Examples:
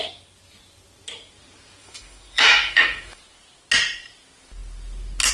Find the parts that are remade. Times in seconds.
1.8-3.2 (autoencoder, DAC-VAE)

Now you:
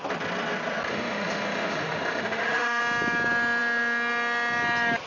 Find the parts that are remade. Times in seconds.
0.9-2.8 (autoencoder, DAC-VAE)

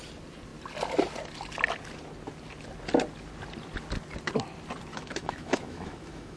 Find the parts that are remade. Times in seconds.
4.9-6.4 (autoencoder, DAC-VAE)

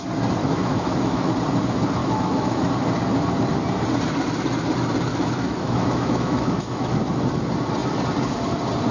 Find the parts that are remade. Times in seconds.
0.4-1.3 (autoencoder, DAC-VAE); 2.0-2.7; 5.1-7.2

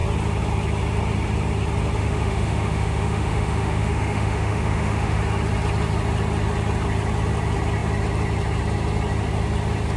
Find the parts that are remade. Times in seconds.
2.0-5.2 (autoencoder, DAC-VAE)

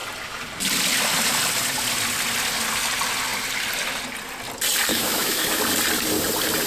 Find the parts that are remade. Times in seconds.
4.9-5.6 (autoencoder, DAC-VAE)

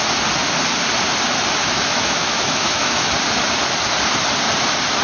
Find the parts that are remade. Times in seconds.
1.6-3.1 (autoencoder, DAC-VAE)